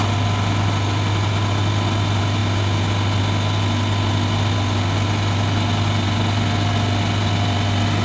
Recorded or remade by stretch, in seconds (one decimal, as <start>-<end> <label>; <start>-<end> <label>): 0.0-8.0 recorded